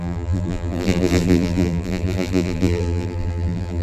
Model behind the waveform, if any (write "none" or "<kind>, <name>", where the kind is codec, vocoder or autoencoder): vocoder, BigVGAN v2